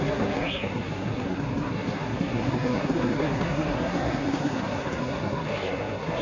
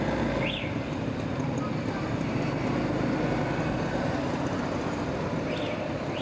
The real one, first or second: second